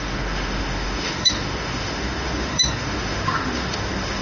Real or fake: fake